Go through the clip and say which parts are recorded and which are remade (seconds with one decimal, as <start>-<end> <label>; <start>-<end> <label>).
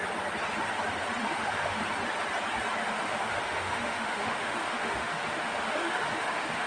0.0-1.2 recorded; 1.2-1.8 remade; 1.8-2.8 recorded; 2.8-6.7 remade